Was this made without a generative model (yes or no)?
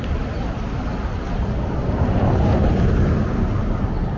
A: yes